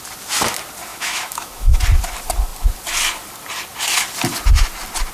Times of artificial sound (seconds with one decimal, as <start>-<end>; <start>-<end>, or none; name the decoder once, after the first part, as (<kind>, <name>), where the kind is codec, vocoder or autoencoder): 0.9-1.8 (autoencoder, DAC-VAE)